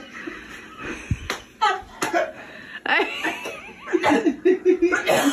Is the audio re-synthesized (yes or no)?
no